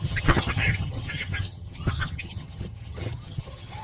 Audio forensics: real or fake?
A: fake